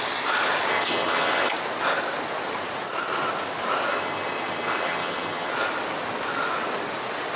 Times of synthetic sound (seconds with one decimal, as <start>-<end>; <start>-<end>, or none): 0.7-1.5; 3.9-5.5